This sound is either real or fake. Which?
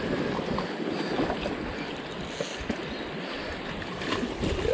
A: real